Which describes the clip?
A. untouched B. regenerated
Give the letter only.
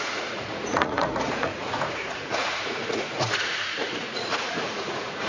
B